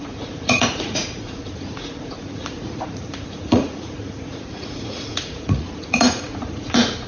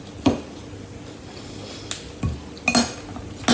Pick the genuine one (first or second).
second